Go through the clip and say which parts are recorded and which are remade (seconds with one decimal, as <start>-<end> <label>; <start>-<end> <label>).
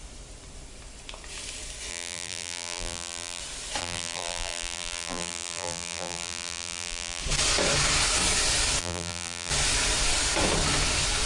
0.0-1.9 recorded; 1.9-3.4 remade; 3.4-3.8 recorded; 3.8-7.2 remade; 7.2-8.8 recorded; 8.8-9.5 remade; 9.5-11.3 recorded